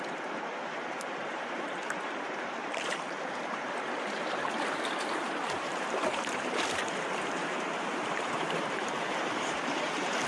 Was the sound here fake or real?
fake